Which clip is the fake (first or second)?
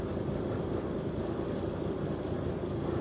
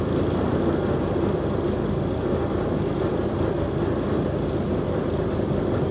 first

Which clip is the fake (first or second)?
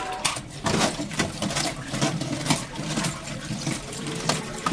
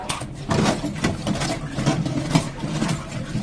first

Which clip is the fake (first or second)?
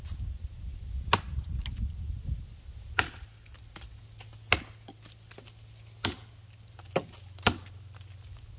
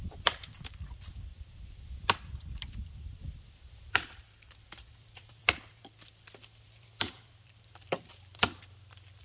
second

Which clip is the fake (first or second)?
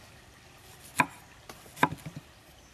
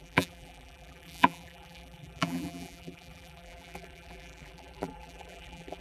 second